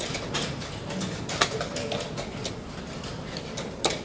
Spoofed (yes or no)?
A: no